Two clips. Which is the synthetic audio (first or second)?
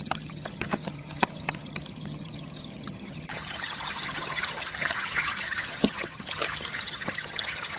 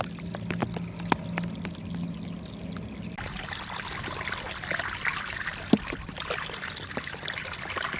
first